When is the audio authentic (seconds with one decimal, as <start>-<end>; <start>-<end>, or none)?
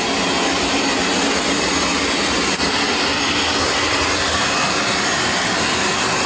0.0-6.3